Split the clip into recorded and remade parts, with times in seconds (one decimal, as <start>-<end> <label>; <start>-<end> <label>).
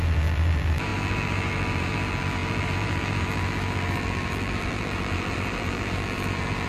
0.0-6.7 remade